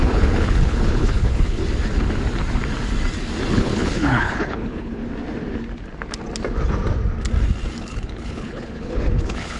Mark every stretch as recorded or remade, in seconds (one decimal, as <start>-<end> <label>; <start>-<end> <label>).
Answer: 0.0-1.6 remade; 1.6-3.5 recorded; 3.5-5.0 remade; 5.0-7.8 recorded; 7.8-9.6 remade